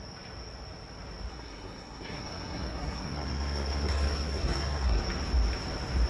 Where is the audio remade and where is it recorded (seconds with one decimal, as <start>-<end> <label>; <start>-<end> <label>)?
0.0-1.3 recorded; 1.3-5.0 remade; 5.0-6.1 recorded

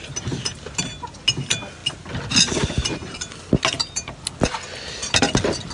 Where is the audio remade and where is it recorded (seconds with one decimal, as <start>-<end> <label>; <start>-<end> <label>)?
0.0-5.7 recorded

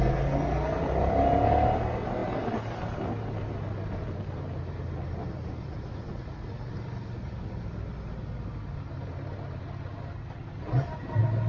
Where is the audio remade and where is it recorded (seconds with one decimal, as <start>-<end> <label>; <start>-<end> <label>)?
0.0-11.5 recorded

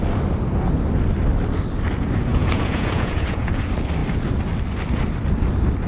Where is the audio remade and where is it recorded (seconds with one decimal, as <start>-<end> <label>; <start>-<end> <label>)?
0.0-2.3 recorded; 2.3-3.6 remade; 3.6-5.9 recorded